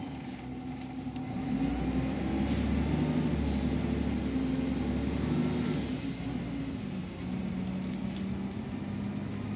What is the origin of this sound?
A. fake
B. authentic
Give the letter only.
B